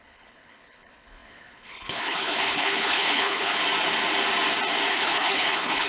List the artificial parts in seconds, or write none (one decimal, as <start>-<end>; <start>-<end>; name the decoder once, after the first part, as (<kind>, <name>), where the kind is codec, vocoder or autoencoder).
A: 0.0-3.6 (codec, HILCodec); 4.9-5.9